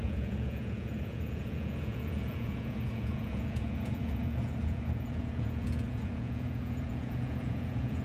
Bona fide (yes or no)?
no